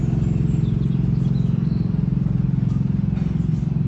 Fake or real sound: real